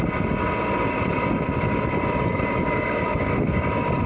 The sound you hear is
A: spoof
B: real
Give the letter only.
A